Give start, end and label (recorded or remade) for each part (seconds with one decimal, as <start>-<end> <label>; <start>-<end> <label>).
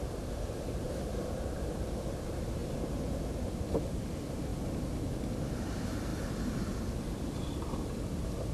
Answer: 0.0-2.6 remade; 2.6-3.9 recorded; 3.9-4.5 remade; 4.5-5.6 recorded; 5.6-8.5 remade